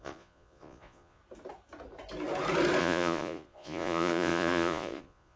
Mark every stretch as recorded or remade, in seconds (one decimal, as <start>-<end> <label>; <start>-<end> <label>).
0.0-1.2 remade; 1.2-2.8 recorded; 2.8-5.4 remade